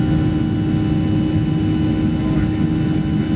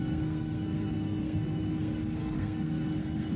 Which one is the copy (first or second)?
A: second